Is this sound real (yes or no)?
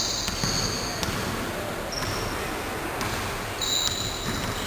yes